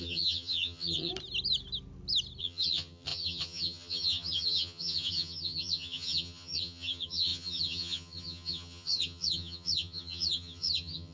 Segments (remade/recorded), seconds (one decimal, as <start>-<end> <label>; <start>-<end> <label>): 0.0-1.1 remade; 1.1-2.4 recorded; 2.4-11.1 remade